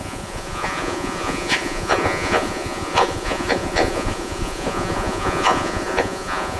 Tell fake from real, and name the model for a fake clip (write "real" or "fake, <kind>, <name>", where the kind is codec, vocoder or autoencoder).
fake, vocoder, Vocos